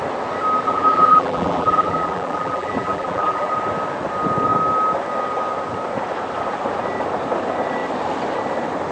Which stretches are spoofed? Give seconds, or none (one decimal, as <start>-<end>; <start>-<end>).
0.6-3.5